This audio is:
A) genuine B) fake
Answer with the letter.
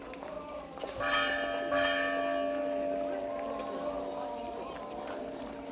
A